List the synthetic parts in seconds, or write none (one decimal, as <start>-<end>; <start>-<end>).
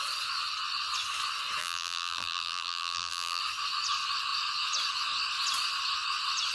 1.6-3.4